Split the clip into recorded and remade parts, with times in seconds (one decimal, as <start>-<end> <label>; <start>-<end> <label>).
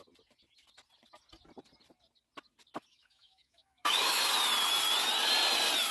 0.0-2.9 recorded; 2.9-4.2 remade; 4.2-5.9 recorded